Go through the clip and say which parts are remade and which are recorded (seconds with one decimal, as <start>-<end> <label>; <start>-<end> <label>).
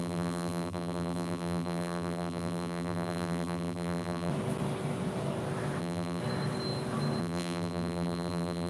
0.0-4.3 remade; 4.3-5.8 recorded; 5.8-6.2 remade; 6.2-7.2 recorded; 7.2-8.7 remade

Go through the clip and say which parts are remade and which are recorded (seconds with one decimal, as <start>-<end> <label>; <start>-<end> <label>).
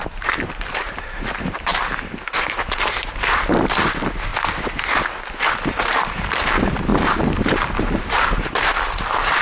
0.0-1.7 remade; 1.7-2.4 recorded; 2.4-4.3 remade; 4.3-5.4 recorded; 5.4-9.4 remade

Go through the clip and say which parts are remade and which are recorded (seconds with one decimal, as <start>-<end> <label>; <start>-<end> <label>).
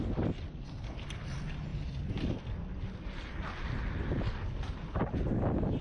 0.0-5.8 recorded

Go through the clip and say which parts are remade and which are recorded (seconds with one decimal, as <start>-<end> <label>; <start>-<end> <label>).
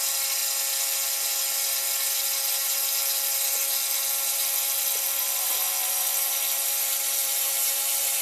0.0-7.2 recorded; 7.2-8.2 remade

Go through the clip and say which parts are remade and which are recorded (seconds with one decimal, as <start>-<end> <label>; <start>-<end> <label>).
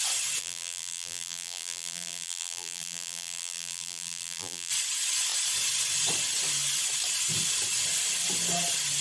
0.0-0.4 recorded; 0.4-4.7 remade; 4.7-9.0 recorded